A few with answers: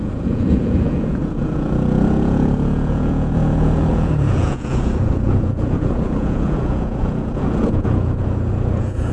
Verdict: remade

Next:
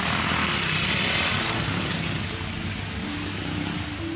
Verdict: recorded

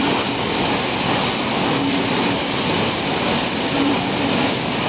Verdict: remade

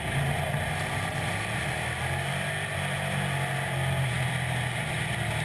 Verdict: recorded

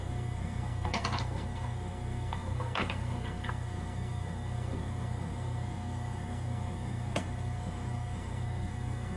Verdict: remade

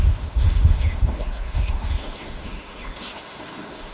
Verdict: remade